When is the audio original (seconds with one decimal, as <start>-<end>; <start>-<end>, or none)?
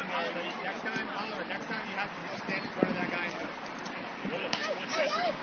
0.0-4.4